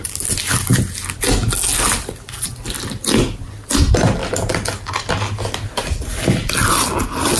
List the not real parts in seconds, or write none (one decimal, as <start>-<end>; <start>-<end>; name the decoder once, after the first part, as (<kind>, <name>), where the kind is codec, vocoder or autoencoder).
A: none